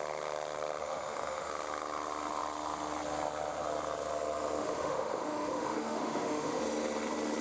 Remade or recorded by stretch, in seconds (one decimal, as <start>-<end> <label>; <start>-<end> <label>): 0.0-0.8 recorded; 0.8-1.5 remade; 1.5-4.6 recorded; 4.6-6.6 remade; 6.6-7.4 recorded